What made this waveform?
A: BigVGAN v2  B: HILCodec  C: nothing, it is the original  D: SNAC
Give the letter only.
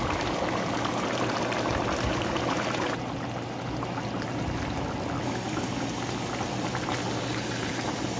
C